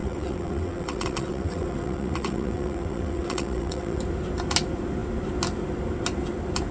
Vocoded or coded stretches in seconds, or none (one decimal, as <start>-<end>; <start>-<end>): 0.0-4.0